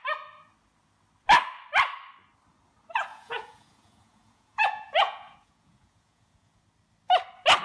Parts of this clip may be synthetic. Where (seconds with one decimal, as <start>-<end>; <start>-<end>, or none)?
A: 3.1-6.6

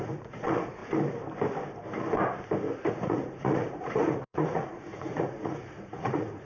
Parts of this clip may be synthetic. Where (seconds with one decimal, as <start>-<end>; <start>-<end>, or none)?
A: 0.0-0.8; 2.9-6.4

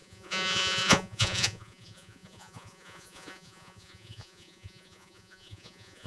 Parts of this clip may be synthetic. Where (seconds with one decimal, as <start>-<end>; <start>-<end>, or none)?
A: 0.0-6.1

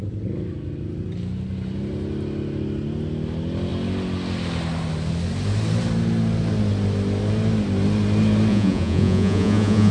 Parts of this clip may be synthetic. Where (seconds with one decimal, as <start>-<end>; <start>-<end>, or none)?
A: 8.5-9.9

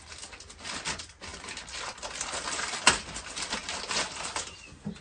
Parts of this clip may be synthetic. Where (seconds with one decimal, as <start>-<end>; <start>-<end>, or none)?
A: none

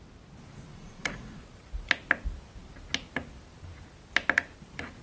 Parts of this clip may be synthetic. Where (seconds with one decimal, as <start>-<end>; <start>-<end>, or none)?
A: 0.7-1.4